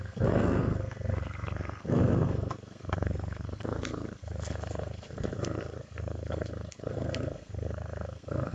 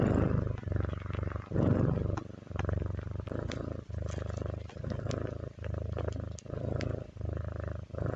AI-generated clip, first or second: first